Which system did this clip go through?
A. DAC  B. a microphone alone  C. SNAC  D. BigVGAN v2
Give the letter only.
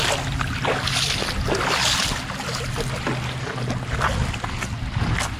B